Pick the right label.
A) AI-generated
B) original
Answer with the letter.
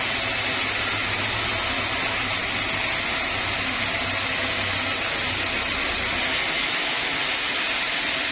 B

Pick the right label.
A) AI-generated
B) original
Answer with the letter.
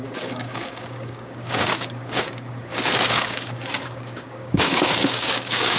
A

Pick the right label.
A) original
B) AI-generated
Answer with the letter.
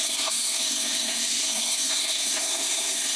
B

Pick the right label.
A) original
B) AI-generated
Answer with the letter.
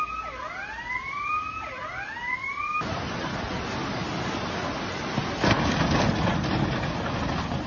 A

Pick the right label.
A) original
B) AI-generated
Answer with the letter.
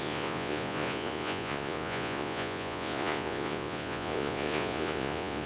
B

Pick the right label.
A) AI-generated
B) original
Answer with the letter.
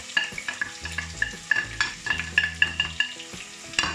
B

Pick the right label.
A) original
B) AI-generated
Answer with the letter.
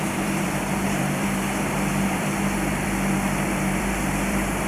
B